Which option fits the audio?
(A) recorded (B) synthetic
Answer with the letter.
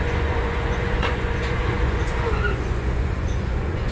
B